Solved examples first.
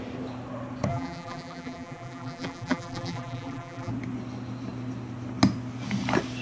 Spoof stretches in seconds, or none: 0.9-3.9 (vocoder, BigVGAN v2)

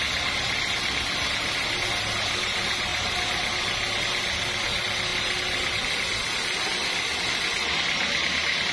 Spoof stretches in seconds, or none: none

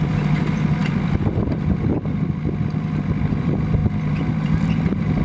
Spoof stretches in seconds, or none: 0.0-5.2 (vocoder, BigVGAN v2)